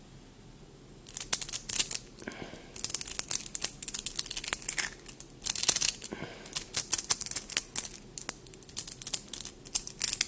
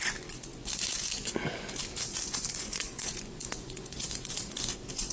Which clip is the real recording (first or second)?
first